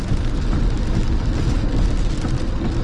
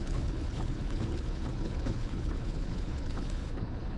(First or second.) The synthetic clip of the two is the second